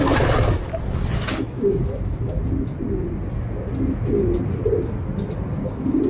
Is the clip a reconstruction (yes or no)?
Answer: no